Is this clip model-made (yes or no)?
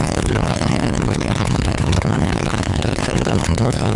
yes